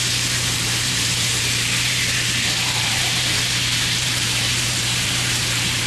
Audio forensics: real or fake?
fake